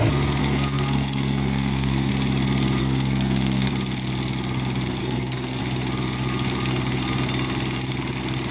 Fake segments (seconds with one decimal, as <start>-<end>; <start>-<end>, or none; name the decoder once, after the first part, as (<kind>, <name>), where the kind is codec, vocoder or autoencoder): 0.4-2.1 (codec, SNAC); 2.8-3.7; 5.0-5.6

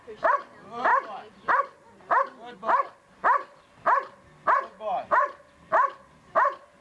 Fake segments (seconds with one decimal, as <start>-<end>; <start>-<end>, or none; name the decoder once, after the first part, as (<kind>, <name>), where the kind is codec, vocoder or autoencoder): 0.0-0.9 (vocoder, BigVGAN v2); 3.0-6.8

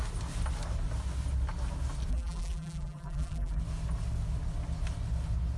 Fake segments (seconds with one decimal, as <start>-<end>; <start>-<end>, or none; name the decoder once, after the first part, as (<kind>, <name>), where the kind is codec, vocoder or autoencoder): 2.1-3.6 (vocoder, BigVGAN v2)